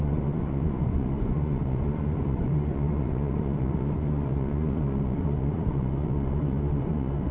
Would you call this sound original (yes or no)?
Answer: no